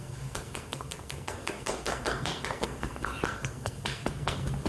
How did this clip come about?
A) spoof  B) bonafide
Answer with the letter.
A